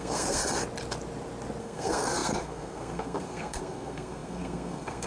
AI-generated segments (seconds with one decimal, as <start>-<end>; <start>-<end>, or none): 0.0-0.4; 1.6-5.1